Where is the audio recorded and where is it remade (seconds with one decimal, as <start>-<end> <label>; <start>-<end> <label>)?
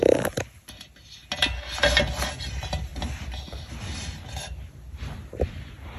0.0-1.2 remade; 1.2-2.0 recorded; 2.0-2.9 remade; 2.9-3.8 recorded; 3.8-6.0 remade